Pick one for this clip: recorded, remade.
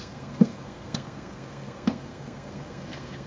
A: remade